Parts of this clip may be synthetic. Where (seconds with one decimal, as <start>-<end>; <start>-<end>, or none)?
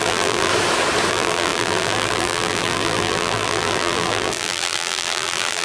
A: 0.0-0.5; 1.1-5.6